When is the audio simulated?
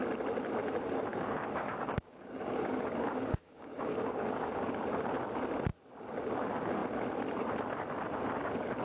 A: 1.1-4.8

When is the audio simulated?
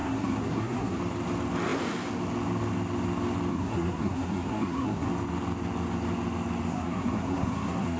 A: 0.0-1.0; 3.5-5.1; 6.7-8.0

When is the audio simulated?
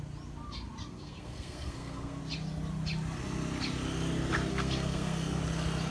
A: 0.8-2.2; 4.5-5.4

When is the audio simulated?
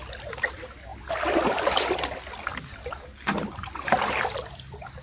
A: none